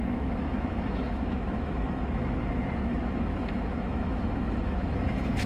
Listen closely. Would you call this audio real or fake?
fake